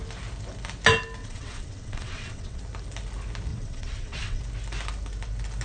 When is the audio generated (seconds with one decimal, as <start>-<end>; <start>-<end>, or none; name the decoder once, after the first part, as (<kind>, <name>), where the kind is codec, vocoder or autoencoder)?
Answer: 1.2-2.6 (vocoder, WaveNeXt); 3.5-4.4